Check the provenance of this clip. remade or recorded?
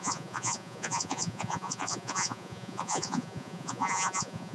remade